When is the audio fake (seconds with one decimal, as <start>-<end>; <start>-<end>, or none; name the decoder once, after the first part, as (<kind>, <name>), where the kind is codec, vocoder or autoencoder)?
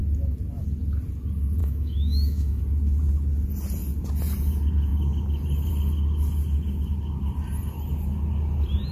1.6-2.6 (autoencoder, DAC-VAE)